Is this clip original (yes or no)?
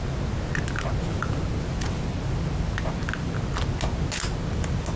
yes